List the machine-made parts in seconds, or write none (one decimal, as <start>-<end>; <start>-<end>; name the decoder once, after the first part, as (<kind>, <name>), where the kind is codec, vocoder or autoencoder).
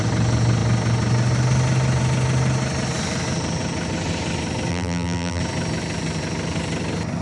4.7-5.4 (vocoder, BigVGAN v2)